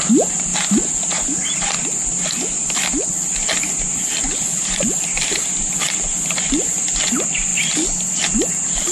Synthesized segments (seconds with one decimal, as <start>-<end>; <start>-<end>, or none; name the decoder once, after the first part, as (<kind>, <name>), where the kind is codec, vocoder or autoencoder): 0.0-0.5 (vocoder, BigVGAN v2); 1.5-8.9